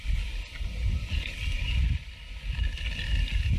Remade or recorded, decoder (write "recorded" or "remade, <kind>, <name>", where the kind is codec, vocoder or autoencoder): recorded